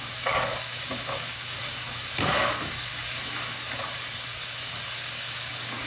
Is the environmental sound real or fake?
fake